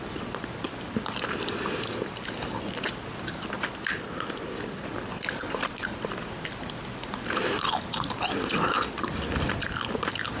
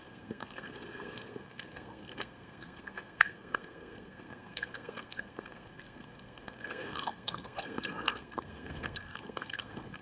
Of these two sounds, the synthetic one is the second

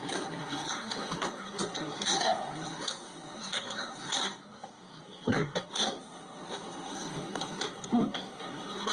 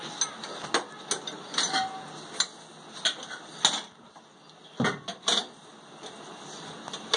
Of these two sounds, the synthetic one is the first